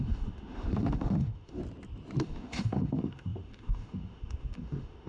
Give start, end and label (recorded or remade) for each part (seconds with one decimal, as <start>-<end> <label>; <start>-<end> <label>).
0.0-1.6 remade; 1.6-2.2 recorded; 2.2-5.1 remade